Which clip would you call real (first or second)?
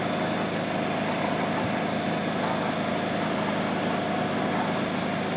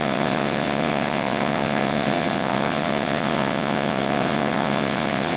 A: first